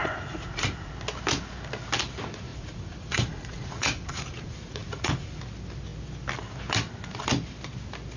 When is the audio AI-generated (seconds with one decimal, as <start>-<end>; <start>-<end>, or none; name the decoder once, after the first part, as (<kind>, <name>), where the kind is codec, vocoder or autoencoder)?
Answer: 0.0-0.9 (vocoder, Vocos); 2.5-5.4